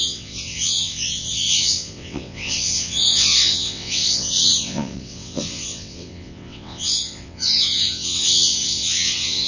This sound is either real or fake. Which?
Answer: fake